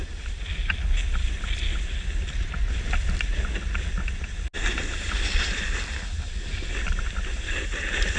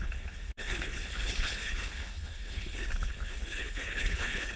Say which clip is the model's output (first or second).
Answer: second